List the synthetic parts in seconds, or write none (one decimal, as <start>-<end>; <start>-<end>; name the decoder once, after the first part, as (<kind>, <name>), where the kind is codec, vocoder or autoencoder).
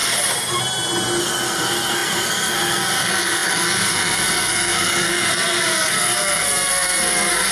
1.2-7.5 (codec, SNAC)